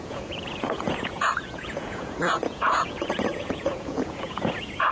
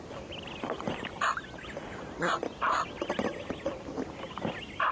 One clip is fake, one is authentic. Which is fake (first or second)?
first